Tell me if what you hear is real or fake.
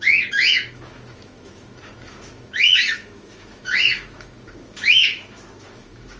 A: fake